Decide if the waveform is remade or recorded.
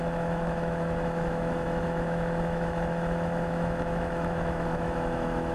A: remade